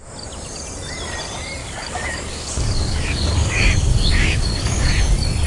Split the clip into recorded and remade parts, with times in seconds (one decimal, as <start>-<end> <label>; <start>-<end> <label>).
0.0-1.6 recorded; 1.6-4.9 remade; 4.9-5.5 recorded